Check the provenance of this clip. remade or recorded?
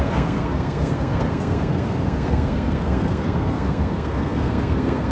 remade